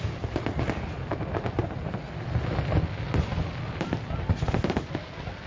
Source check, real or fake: real